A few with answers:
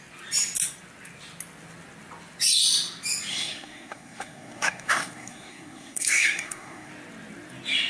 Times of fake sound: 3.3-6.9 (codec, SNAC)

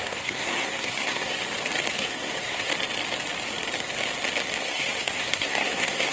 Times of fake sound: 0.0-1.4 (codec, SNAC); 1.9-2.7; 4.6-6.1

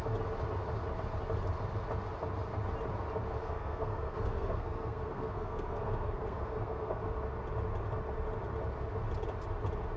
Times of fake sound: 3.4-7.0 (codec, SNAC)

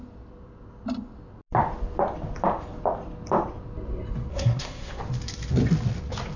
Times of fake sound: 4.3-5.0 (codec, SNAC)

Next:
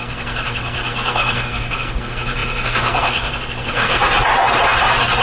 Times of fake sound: 0.0-4.0 (codec, SNAC)

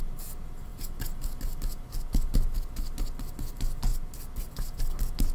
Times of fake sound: none